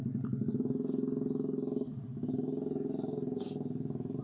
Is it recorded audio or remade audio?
recorded